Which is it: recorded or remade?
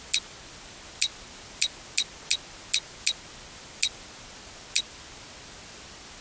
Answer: recorded